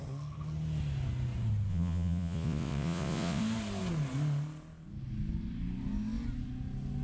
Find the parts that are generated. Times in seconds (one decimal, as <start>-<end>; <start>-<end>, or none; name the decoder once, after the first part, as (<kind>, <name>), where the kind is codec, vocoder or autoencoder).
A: 1.7-3.4 (vocoder, Vocos)

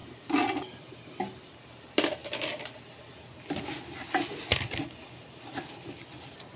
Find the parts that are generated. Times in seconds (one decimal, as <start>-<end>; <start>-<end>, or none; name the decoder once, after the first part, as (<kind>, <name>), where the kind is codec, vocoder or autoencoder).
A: none

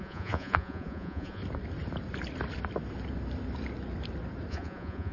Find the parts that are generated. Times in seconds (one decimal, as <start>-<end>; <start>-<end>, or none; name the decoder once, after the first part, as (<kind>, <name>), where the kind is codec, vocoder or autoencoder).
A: 0.0-1.4 (vocoder, Vocos); 4.5-5.1